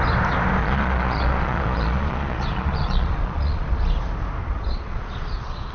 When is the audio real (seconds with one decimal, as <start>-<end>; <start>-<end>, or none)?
0.0-0.6; 4.0-4.4